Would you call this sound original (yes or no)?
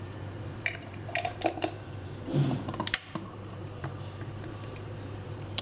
no